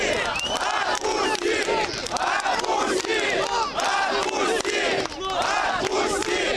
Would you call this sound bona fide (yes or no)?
yes